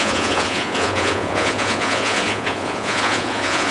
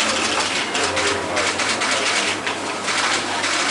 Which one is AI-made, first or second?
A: first